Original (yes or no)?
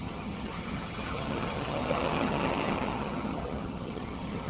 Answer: no